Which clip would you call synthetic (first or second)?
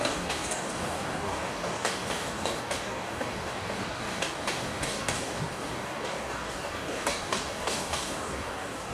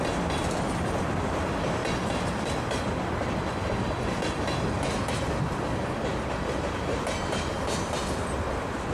first